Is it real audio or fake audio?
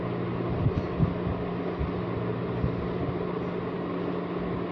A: real